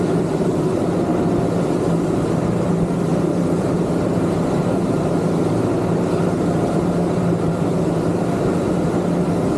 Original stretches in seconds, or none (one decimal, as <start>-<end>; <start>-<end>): 1.1-1.9